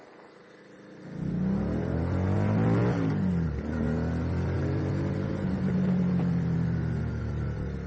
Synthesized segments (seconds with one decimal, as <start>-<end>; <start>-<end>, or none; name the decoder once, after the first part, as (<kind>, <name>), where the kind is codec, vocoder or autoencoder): none